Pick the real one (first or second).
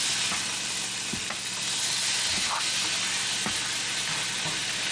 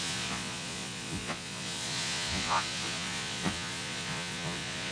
first